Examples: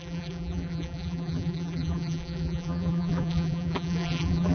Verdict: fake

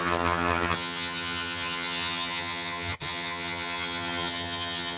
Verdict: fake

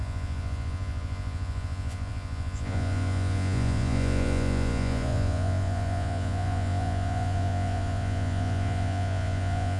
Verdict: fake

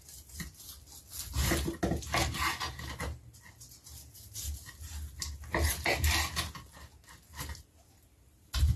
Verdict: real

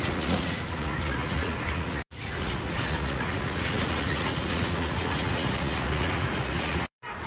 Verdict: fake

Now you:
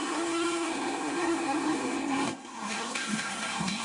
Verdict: fake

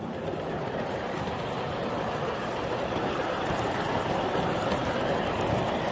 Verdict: real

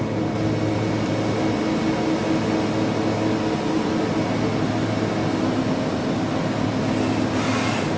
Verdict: real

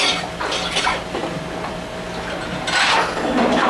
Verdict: real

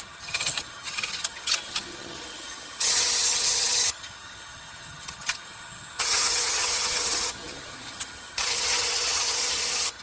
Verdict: fake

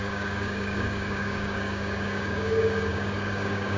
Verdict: fake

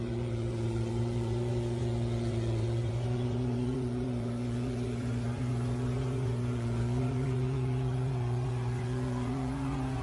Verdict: fake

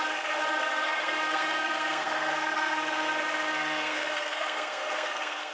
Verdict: fake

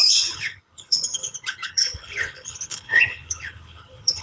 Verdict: fake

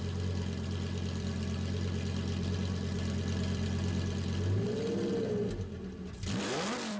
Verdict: real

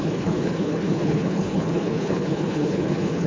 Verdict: fake